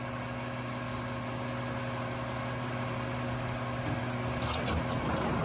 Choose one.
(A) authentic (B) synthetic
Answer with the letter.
A